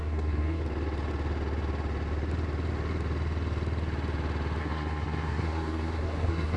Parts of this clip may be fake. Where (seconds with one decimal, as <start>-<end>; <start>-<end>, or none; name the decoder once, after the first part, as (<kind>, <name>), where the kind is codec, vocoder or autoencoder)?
0.0-0.6 (codec, SNAC); 4.6-6.6